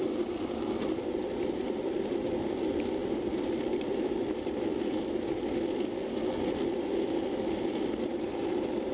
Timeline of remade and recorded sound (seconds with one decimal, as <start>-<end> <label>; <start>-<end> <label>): 0.0-8.9 recorded